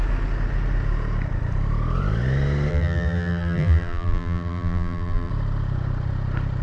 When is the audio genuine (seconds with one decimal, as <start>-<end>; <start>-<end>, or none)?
0.0-2.7; 5.3-6.6